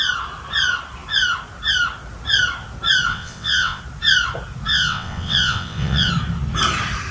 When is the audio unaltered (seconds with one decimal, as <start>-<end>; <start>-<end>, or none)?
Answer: 0.0-3.1; 3.8-4.7; 6.1-7.1